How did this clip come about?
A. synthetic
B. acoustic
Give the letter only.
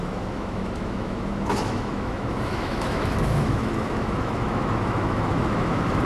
A